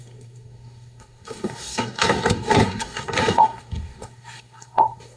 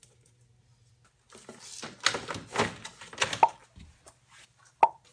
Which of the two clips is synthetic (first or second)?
first